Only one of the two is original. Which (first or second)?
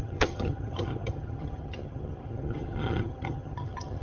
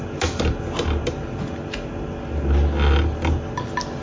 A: second